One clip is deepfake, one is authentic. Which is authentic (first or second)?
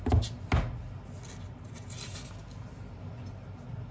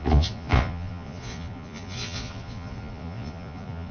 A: first